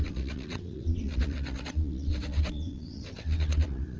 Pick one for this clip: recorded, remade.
remade